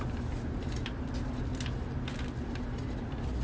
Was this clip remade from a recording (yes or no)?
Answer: no